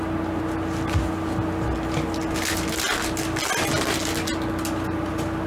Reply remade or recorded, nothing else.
recorded